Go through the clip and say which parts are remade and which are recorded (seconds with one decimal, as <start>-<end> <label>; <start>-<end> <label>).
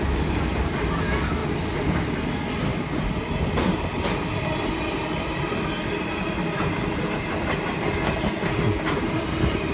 0.0-9.7 recorded